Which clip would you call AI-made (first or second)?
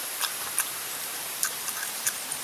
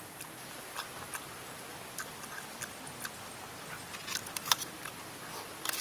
first